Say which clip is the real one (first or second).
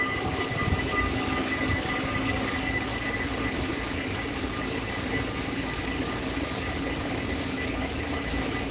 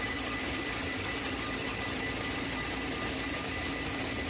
second